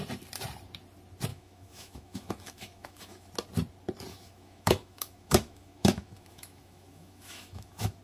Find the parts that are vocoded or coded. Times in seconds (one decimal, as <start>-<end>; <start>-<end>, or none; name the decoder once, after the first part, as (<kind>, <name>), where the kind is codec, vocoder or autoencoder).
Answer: 1.3-3.3 (autoencoder, DAC-VAE); 4.1-8.0